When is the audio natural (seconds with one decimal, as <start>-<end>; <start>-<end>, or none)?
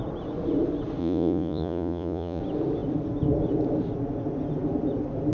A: 0.0-1.0; 2.4-5.3